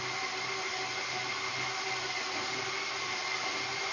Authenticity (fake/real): real